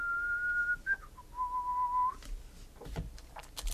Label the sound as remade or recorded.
recorded